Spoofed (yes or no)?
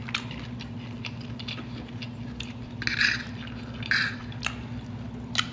no